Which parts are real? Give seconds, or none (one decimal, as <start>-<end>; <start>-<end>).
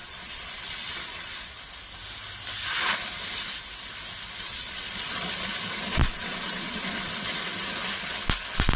1.6-4.5; 5.5-5.9; 7.1-8.8